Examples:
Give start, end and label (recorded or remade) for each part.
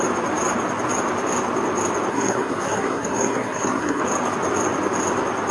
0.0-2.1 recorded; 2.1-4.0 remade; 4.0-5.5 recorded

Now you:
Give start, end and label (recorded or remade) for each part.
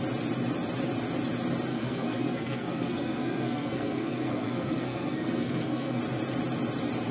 0.0-1.7 recorded; 1.7-6.0 remade; 6.0-7.1 recorded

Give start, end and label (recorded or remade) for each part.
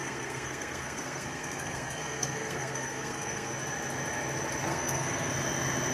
0.0-3.5 remade; 3.5-4.7 recorded; 4.7-5.3 remade; 5.3-5.9 recorded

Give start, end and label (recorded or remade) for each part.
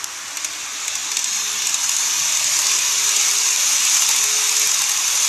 0.0-5.3 recorded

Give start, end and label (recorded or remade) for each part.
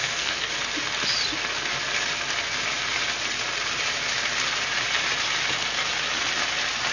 0.0-0.5 remade; 0.5-6.9 recorded